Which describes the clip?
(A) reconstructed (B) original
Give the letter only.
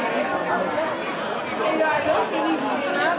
B